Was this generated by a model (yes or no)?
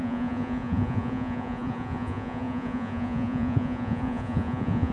yes